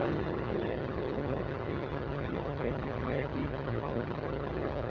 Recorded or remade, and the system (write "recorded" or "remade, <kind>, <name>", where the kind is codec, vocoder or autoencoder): remade, vocoder, HiFi-GAN